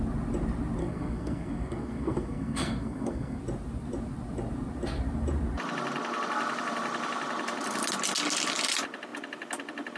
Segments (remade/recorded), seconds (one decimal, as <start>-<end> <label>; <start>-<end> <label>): 0.0-0.8 recorded; 0.8-3.4 remade; 3.4-10.0 recorded